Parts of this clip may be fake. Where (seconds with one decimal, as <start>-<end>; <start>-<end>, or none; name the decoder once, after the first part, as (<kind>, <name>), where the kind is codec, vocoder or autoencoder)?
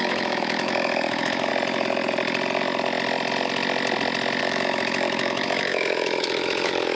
0.0-1.5 (autoencoder, DAC-VAE); 4.4-6.9